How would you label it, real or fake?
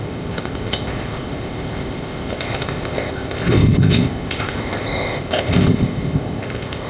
fake